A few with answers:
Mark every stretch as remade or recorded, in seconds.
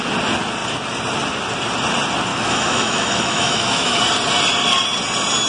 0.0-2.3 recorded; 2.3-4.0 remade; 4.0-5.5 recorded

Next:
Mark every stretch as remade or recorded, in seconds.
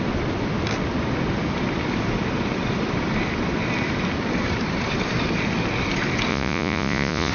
0.0-6.3 recorded; 6.3-7.3 remade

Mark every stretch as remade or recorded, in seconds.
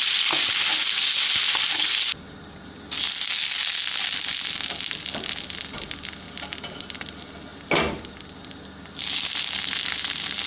0.0-10.5 recorded